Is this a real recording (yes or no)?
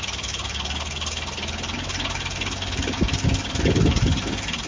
yes